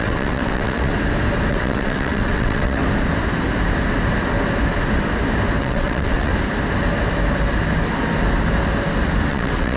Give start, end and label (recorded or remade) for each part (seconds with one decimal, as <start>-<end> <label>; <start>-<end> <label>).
0.0-0.9 remade; 0.9-1.5 recorded; 1.5-2.8 remade; 2.8-5.6 recorded; 5.6-6.3 remade; 6.3-9.3 recorded; 9.3-9.8 remade